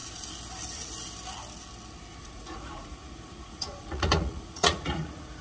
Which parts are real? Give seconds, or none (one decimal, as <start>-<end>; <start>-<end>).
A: 0.0-2.2